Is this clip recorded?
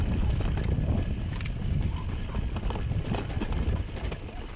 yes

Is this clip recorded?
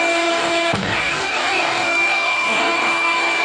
no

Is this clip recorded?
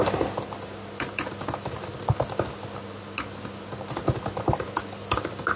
yes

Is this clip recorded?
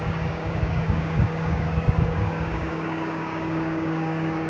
no